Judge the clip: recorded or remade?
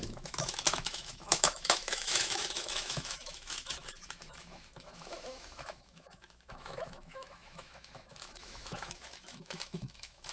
remade